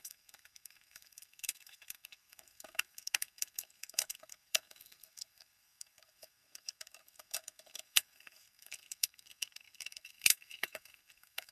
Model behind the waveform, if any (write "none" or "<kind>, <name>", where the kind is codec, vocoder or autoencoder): codec, SNAC